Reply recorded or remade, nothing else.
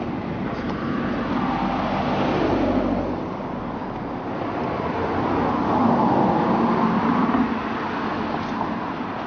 recorded